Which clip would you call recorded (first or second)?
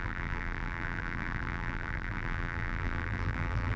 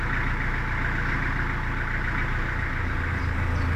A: second